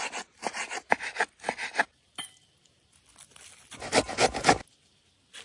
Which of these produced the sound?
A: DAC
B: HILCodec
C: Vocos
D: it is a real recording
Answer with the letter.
D